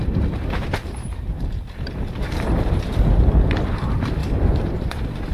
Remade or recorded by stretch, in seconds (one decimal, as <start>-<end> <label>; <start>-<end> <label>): 0.0-3.2 remade; 3.2-4.2 recorded; 4.2-5.3 remade